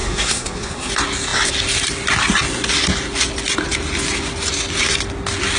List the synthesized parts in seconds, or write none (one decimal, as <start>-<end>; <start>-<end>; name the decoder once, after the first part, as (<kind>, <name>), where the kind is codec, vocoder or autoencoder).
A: 0.0-0.9 (codec, SNAC)